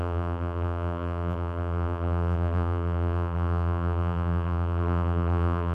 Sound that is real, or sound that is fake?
fake